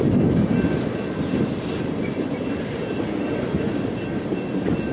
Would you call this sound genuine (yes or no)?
yes